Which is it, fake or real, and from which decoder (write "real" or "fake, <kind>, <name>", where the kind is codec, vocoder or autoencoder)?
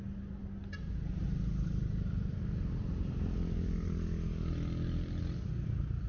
real